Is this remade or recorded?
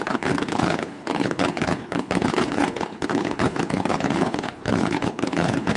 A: remade